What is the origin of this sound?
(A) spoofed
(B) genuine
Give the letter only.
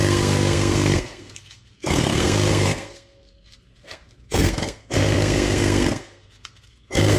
A